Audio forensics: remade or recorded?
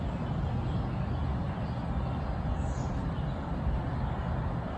recorded